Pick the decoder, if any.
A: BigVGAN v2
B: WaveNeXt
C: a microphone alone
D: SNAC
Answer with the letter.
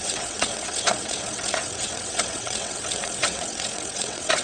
B